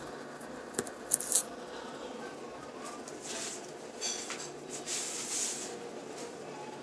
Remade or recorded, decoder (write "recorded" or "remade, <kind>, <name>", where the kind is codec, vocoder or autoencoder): recorded